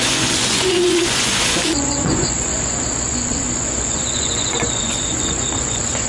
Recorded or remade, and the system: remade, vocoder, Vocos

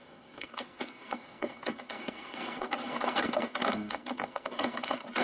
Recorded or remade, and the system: remade, codec, SNAC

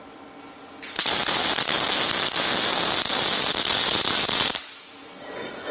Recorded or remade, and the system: recorded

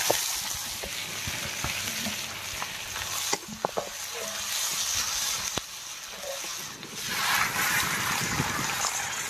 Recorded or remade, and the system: recorded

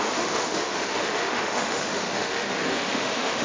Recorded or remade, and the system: remade, autoencoder, DAC-VAE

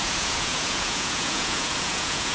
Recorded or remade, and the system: remade, vocoder, Vocos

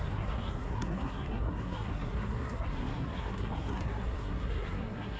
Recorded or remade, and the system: remade, codec, SNAC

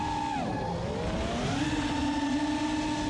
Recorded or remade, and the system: recorded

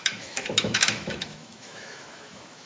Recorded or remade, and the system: remade, autoencoder, DAC-VAE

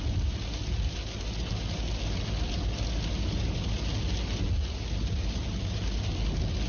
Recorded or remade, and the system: recorded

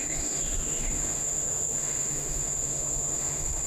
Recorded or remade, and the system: remade, autoencoder, DAC-VAE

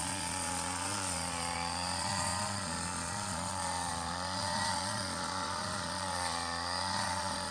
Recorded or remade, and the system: remade, vocoder, Vocos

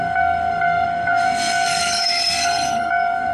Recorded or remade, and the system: remade, codec, SNAC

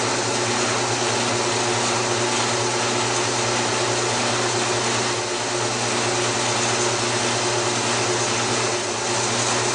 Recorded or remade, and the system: recorded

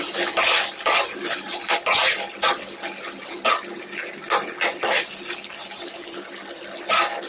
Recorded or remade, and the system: recorded